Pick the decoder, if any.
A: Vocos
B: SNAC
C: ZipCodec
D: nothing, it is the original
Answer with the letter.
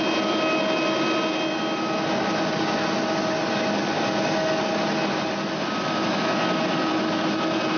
D